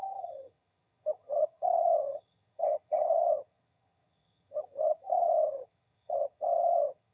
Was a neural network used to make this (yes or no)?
yes